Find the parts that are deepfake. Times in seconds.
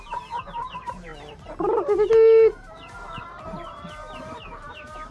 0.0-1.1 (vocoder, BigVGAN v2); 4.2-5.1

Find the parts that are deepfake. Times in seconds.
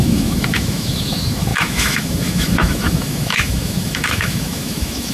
0.0-5.1 (autoencoder, DAC-VAE)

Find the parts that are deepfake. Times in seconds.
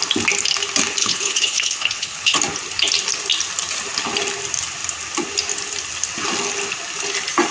1.0-2.4 (codec, HILCodec)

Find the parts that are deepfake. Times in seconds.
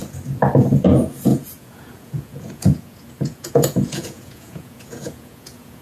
0.6-5.8 (vocoder, Vocos)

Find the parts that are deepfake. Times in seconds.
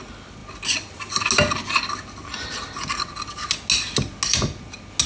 none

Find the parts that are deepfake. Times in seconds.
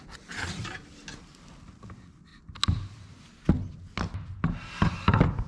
none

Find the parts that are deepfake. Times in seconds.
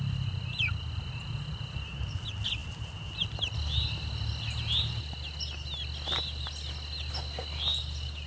none